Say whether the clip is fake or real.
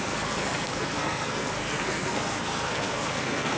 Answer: fake